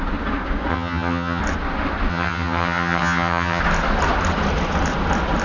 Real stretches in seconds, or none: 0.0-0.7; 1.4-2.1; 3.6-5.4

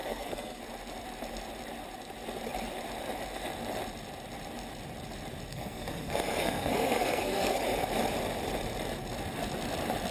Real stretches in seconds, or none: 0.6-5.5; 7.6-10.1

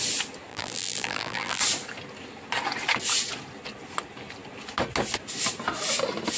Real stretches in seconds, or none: 0.0-0.5; 1.6-6.4

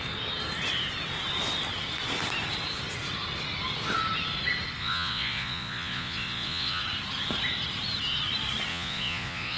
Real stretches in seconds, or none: 0.0-4.8; 6.8-8.7

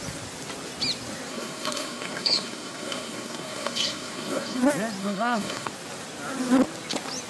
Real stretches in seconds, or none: 0.0-1.3; 4.6-5.0; 5.7-7.3